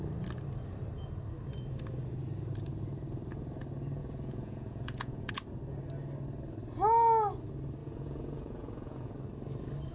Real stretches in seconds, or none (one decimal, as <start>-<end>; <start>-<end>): 0.0-4.0; 5.3-7.8; 9.1-9.9